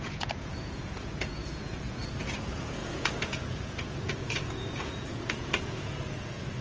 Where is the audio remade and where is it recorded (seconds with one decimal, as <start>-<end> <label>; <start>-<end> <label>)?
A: 0.0-6.6 remade